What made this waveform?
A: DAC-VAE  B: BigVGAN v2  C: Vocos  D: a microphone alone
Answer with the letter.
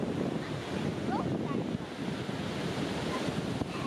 D